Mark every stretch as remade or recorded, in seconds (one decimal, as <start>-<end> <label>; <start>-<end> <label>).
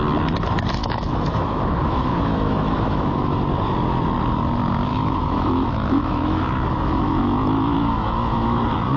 0.0-0.8 recorded; 0.8-3.4 remade; 3.4-4.9 recorded; 4.9-8.6 remade; 8.6-9.0 recorded